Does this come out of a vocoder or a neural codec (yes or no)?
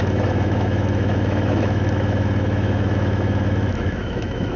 yes